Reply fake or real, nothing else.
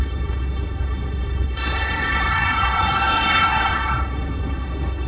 fake